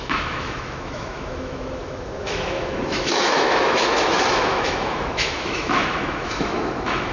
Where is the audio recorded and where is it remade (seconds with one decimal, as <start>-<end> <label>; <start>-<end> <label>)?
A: 0.0-7.1 remade